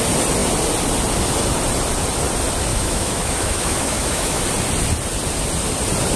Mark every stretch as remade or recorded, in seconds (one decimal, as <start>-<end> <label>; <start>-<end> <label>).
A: 0.0-2.7 recorded; 2.7-4.4 remade; 4.4-6.2 recorded